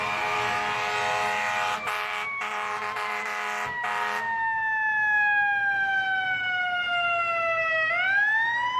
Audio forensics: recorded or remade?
recorded